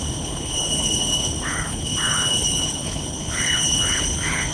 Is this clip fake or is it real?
fake